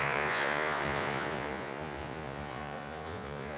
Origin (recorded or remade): remade